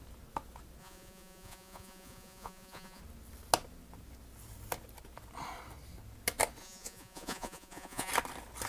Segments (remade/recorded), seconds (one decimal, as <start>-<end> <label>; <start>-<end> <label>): 0.0-0.8 recorded; 0.8-3.0 remade; 3.0-6.6 recorded; 6.6-8.1 remade; 8.1-8.7 recorded